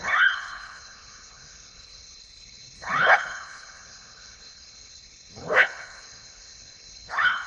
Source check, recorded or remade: remade